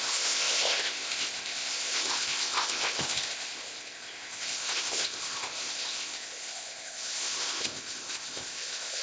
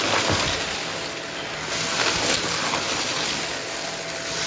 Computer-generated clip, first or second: first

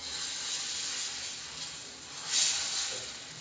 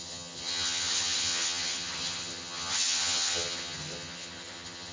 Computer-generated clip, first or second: second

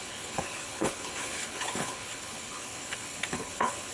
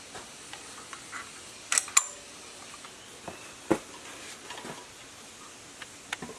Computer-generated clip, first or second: first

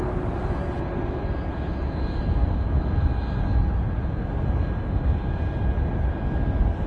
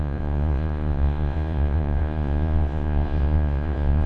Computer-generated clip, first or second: second